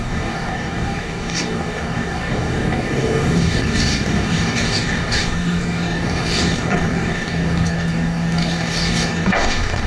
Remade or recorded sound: remade